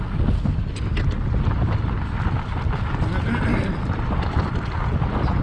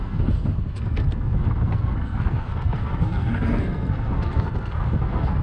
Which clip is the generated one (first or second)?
second